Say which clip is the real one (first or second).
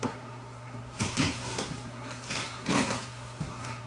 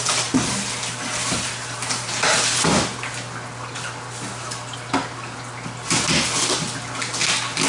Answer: second